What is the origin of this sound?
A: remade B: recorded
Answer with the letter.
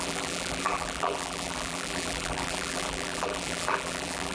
A